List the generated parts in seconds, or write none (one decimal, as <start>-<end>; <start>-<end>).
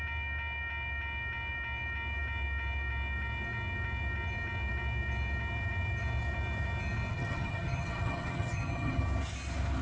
7.1-9.0